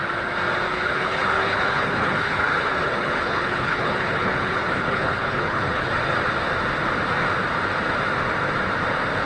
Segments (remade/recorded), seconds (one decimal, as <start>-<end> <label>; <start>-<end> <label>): 0.0-0.7 recorded; 0.7-5.9 remade; 5.9-9.3 recorded